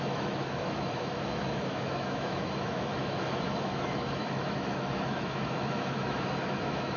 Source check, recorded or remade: remade